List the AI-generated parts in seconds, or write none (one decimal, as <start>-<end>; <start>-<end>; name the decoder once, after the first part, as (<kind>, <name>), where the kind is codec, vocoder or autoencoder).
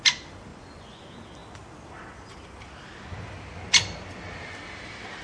0.5-1.0 (vocoder, Vocos)